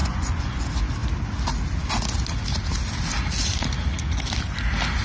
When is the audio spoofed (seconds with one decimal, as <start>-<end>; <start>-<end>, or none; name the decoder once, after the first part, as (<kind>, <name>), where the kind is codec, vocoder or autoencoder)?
0.0-0.6 (vocoder, Vocos)

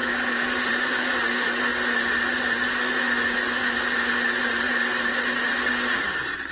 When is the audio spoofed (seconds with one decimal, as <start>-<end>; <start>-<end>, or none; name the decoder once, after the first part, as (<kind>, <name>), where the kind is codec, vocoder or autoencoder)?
none